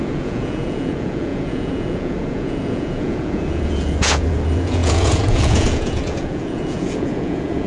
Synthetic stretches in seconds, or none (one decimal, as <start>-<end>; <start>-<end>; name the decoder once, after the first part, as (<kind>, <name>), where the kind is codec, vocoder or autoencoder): 0.0-7.7 (vocoder, Vocos)